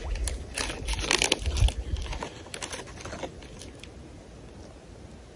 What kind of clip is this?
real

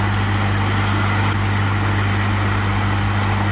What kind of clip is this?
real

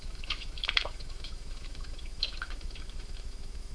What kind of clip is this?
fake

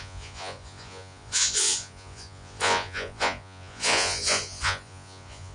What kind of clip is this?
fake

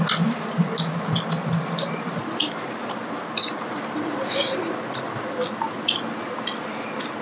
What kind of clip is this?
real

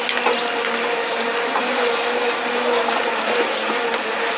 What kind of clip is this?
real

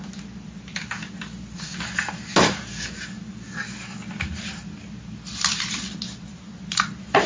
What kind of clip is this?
real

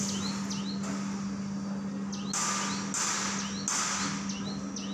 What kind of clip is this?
real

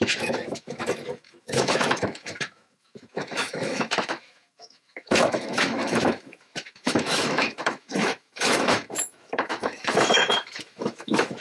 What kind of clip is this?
fake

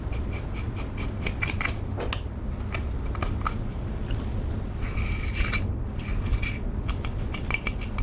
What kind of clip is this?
real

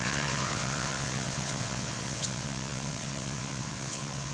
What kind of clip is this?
fake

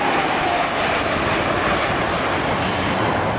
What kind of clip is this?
real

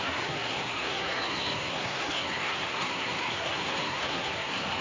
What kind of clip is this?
fake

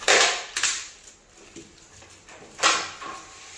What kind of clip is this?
fake